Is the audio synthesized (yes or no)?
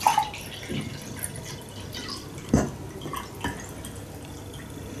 no